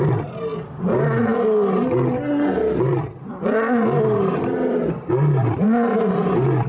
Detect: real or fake real